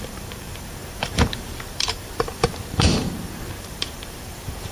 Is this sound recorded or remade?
remade